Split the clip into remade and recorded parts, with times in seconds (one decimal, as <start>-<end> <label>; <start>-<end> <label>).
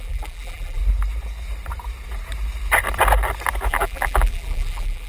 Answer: 0.0-0.8 remade; 0.8-3.7 recorded; 3.7-5.1 remade